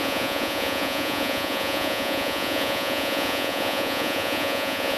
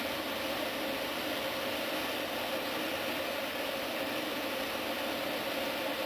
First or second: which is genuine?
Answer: second